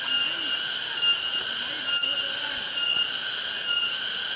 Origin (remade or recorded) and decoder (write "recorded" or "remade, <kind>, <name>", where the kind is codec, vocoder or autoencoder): recorded